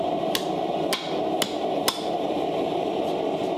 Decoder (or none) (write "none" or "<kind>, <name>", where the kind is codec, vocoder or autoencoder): none